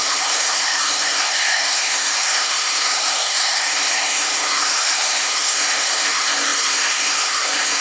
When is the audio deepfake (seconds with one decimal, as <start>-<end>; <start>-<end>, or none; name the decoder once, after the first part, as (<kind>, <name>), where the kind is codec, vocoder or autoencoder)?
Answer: 0.0-7.8 (codec, SNAC)